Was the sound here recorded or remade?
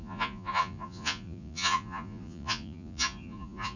remade